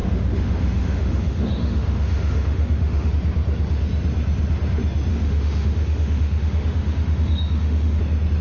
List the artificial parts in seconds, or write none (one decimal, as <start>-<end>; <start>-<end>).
0.0-3.1; 5.1-8.0

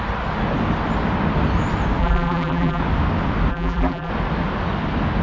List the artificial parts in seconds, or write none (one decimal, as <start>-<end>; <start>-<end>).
2.0-2.8; 3.5-4.1

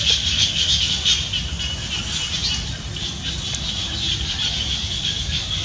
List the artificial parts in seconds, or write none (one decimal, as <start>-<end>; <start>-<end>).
0.0-1.1; 4.5-5.6

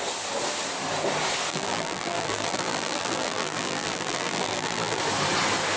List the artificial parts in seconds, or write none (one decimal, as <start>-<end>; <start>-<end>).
1.5-5.0

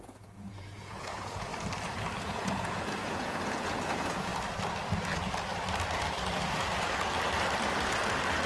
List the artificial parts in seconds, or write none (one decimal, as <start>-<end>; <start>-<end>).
0.0-1.5; 2.2-4.3

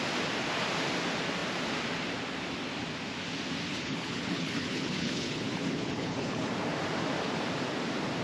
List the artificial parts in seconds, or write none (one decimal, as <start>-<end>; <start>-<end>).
3.7-6.5

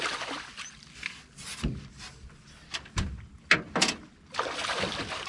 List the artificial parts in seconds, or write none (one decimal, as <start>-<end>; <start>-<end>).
none